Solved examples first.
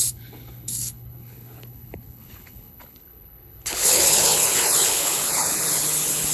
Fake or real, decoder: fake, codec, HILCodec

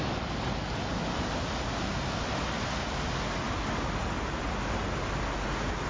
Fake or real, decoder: real